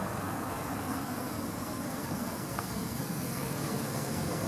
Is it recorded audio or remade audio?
remade